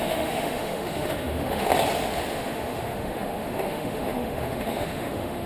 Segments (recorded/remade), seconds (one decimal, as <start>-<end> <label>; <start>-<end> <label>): 0.0-1.7 remade; 1.7-2.3 recorded; 2.3-5.5 remade